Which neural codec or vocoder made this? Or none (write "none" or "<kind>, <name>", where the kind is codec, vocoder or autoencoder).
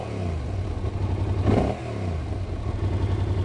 none